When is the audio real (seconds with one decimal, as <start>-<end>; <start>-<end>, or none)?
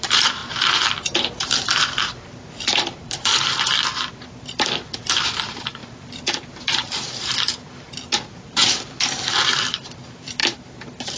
3.3-4.2; 10.4-11.2